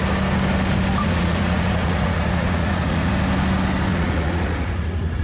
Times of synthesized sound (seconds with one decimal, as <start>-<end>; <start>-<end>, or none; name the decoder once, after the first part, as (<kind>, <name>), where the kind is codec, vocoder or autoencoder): 1.0-3.1 (vocoder, Vocos); 3.9-5.2

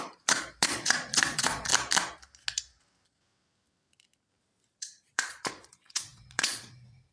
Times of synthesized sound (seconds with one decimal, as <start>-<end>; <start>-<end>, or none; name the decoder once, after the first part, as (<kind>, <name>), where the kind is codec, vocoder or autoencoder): 0.0-1.7 (vocoder, Vocos); 4.8-7.1

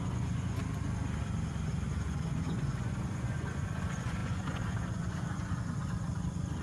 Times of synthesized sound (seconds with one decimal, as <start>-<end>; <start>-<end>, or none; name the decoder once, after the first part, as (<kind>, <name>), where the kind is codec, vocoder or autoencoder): 0.0-0.6 (vocoder, Vocos); 2.0-6.6

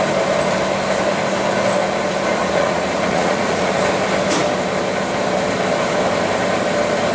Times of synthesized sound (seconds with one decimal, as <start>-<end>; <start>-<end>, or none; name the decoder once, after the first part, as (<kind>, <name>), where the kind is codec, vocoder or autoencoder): 2.4-3.7 (vocoder, Vocos)

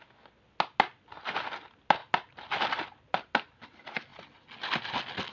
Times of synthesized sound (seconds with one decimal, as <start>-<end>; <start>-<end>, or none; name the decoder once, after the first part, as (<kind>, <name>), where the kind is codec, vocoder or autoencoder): none

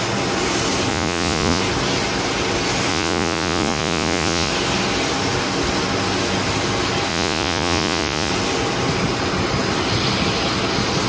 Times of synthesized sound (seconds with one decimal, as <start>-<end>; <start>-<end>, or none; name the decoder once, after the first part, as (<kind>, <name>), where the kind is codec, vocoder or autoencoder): 0.9-1.6 (vocoder, Vocos); 2.9-4.5; 7.1-8.3

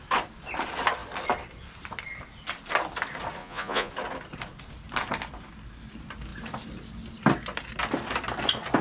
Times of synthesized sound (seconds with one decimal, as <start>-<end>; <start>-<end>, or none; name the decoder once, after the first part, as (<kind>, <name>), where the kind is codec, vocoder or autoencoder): 3.4-3.9 (vocoder, Vocos)

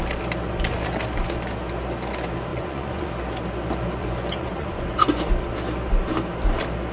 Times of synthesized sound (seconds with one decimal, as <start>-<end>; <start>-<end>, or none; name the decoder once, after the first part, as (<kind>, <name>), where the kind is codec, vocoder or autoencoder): 2.5-3.1 (vocoder, Vocos); 4.0-5.2